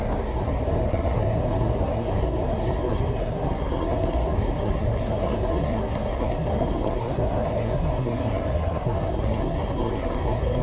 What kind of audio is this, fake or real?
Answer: fake